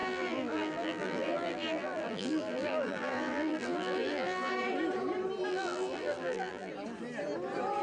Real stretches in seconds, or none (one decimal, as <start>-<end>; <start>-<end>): 4.5-5.5; 6.7-7.8